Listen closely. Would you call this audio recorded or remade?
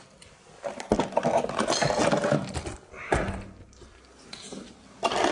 recorded